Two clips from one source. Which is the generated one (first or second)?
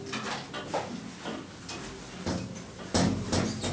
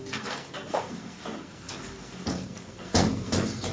second